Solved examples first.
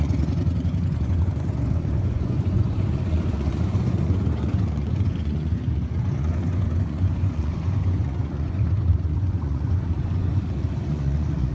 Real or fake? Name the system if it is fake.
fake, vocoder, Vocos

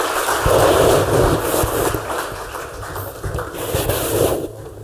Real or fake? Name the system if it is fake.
real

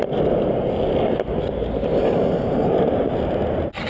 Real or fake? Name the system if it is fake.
real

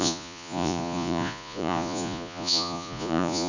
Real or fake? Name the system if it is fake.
fake, vocoder, Vocos